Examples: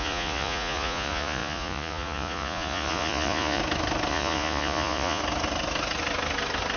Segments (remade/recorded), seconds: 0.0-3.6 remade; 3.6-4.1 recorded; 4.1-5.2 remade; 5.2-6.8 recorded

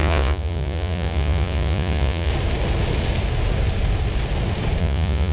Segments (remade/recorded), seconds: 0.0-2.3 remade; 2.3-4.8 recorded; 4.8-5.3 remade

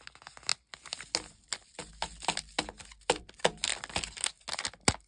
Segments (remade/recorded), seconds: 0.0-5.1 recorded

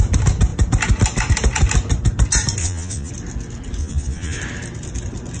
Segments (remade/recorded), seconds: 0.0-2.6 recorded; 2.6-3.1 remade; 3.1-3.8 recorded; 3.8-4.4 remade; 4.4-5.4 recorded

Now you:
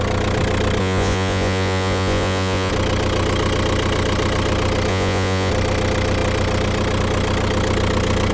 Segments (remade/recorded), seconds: 0.0-0.8 recorded; 0.8-2.7 remade; 2.7-4.9 recorded; 4.9-5.5 remade; 5.5-8.3 recorded